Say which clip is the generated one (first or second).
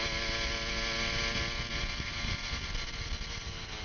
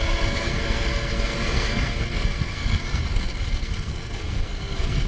second